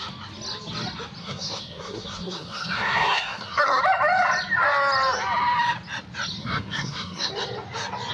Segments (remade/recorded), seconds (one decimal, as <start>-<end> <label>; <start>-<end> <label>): 0.0-1.2 recorded; 1.2-3.8 remade; 3.8-6.4 recorded; 6.4-7.3 remade; 7.3-8.1 recorded